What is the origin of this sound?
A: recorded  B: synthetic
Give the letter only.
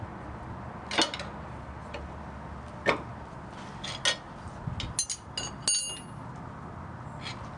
A